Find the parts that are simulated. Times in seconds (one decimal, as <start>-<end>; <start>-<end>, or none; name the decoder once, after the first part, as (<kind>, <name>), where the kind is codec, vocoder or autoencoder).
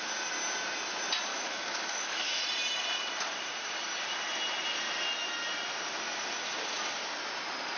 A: 1.3-2.4 (autoencoder, DAC-VAE)